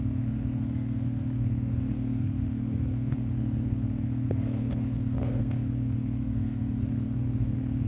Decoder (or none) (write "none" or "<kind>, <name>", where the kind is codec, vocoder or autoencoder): codec, SNAC